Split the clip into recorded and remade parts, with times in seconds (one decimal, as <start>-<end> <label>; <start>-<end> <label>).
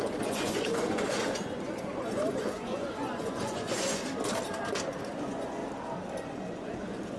0.0-4.0 remade; 4.0-5.0 recorded; 5.0-5.6 remade; 5.6-6.1 recorded; 6.1-7.2 remade